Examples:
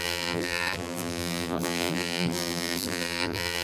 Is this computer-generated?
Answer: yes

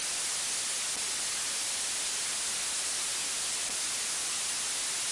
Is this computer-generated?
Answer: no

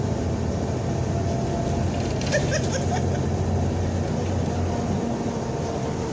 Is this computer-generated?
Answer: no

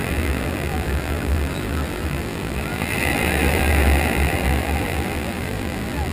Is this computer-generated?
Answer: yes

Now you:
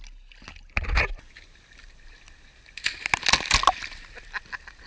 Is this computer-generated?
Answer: no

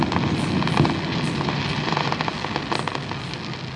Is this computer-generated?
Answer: no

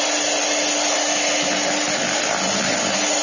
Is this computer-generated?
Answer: no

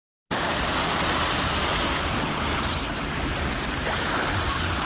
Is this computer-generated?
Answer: no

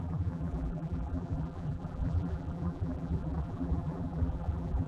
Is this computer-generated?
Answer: yes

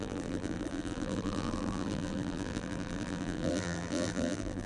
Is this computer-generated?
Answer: yes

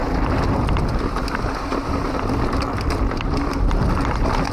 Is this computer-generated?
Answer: no